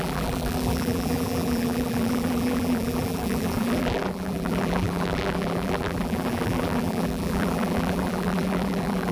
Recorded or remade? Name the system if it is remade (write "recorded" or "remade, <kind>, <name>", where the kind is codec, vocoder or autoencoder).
remade, vocoder, BigVGAN v2